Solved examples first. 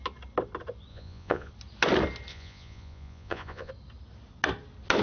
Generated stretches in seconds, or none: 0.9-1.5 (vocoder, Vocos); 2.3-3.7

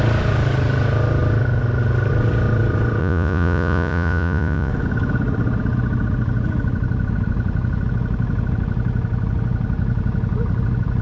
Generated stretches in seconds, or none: 3.0-4.7 (vocoder, Vocos)

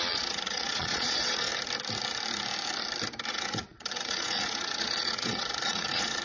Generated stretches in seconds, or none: 0.0-1.5 (vocoder, Vocos); 3.3-6.2

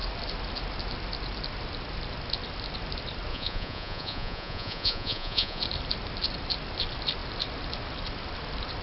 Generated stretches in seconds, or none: 3.3-5.6 (vocoder, Vocos)

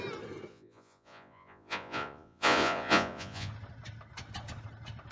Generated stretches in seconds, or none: 0.5-3.5 (vocoder, Vocos)